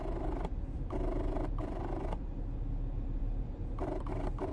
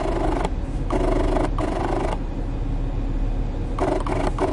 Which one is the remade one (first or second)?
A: first